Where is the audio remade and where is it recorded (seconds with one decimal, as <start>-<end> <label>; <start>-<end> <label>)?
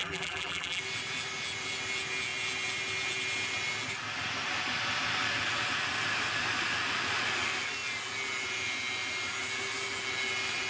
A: 0.0-0.8 remade; 0.8-10.7 recorded